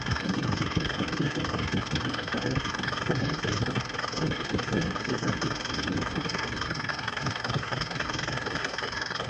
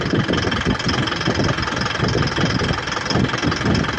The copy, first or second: first